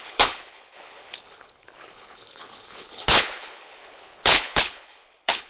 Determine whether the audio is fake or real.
fake